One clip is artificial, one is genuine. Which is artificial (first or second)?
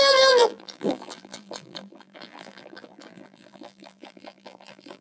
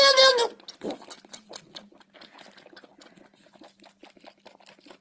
first